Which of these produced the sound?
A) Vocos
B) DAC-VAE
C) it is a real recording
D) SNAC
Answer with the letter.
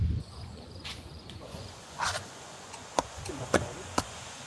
A